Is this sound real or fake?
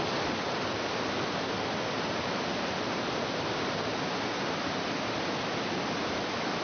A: real